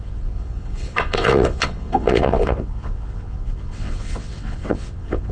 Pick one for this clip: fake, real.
fake